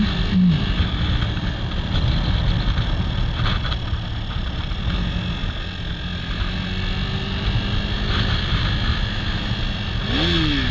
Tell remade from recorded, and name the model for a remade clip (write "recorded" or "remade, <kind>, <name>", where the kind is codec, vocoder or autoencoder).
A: recorded